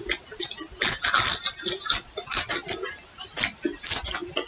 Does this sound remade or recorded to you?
recorded